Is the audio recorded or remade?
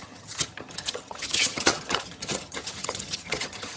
remade